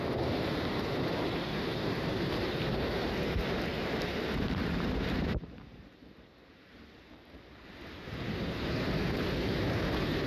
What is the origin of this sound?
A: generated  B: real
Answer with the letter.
A